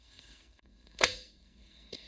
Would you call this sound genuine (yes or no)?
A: no